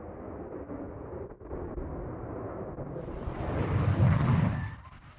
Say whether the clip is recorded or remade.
recorded